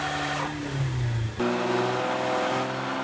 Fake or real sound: real